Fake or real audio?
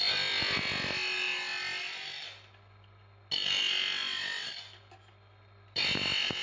real